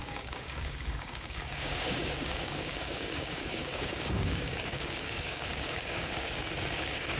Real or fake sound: fake